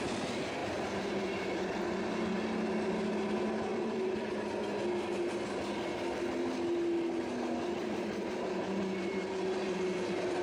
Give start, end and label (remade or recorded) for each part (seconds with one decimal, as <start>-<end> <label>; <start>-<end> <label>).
0.0-0.6 recorded; 0.6-2.2 remade; 2.2-3.7 recorded; 3.7-4.3 remade; 4.3-7.8 recorded; 7.8-8.8 remade; 8.8-10.4 recorded